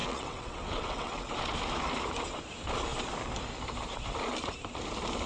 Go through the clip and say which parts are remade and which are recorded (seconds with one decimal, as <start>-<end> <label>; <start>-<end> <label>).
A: 0.0-1.3 remade; 1.3-5.3 recorded